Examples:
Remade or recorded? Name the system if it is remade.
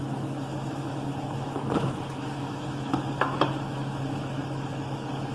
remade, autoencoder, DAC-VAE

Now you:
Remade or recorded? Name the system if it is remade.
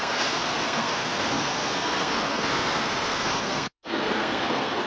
remade, codec, SNAC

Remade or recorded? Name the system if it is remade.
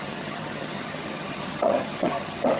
remade, vocoder, HiFi-GAN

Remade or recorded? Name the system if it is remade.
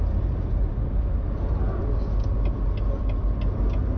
recorded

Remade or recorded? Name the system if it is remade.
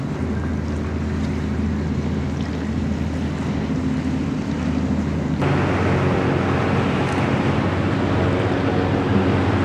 recorded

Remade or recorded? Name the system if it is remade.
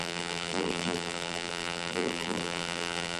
remade, vocoder, BigVGAN v2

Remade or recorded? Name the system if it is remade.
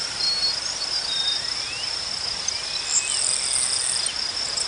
recorded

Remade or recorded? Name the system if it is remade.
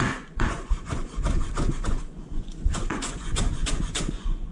remade, vocoder, Vocos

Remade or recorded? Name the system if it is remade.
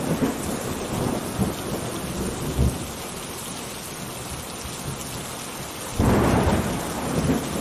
recorded